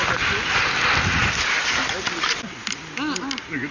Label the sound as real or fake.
real